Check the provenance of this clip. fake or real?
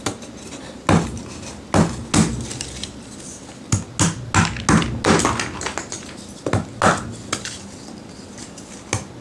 real